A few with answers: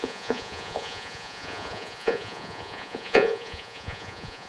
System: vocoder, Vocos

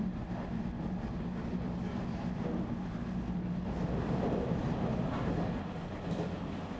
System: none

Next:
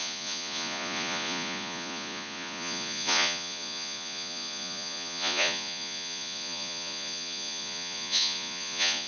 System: vocoder, Vocos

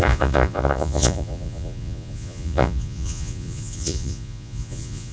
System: vocoder, Vocos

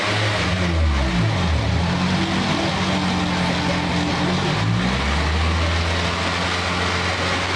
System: none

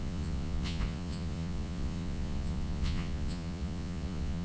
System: vocoder, Vocos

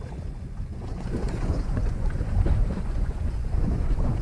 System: vocoder, Vocos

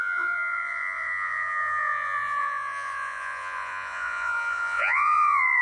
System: vocoder, Vocos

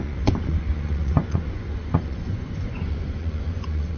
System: vocoder, Vocos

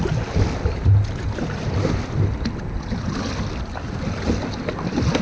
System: none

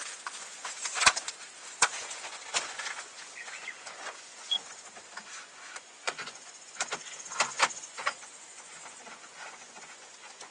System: vocoder, Vocos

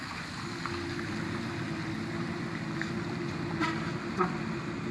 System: none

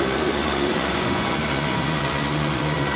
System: vocoder, Vocos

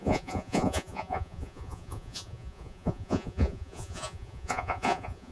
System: vocoder, Vocos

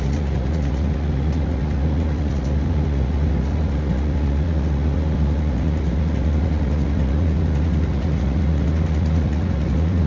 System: vocoder, Vocos